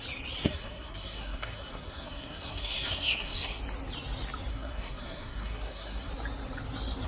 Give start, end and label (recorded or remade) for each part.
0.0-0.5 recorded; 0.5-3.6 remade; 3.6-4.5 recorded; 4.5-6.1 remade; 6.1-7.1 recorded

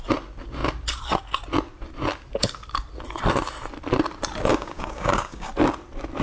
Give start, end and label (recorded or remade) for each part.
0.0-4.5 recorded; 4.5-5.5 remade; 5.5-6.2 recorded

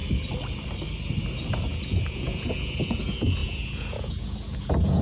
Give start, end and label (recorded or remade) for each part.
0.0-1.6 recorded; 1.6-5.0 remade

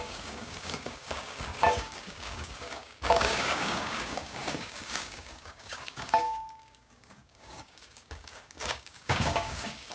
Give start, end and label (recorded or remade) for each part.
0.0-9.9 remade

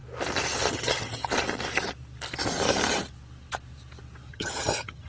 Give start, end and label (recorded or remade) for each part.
0.0-0.7 recorded; 0.7-1.2 remade; 1.2-4.3 recorded; 4.3-5.1 remade

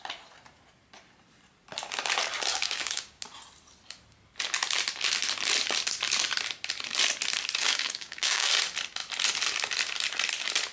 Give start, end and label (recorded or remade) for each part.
0.0-2.5 recorded; 2.5-3.2 remade; 3.2-7.6 recorded; 7.6-8.5 remade; 8.5-10.7 recorded